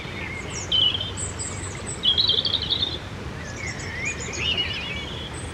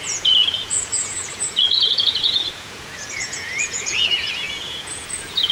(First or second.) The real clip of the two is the first